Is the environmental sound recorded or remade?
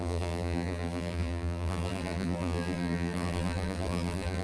remade